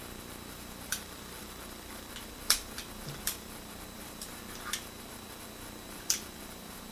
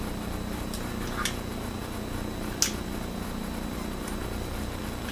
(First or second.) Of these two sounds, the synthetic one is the first